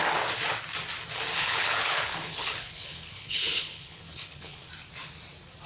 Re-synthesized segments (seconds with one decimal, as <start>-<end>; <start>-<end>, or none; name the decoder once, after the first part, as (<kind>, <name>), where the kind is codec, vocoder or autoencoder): 1.3-4.7 (codec, HILCodec)